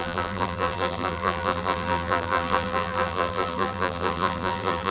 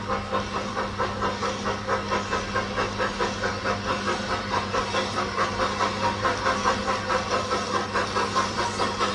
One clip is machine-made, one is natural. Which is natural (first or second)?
second